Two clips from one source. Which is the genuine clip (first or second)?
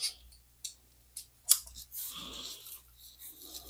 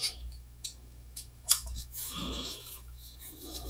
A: first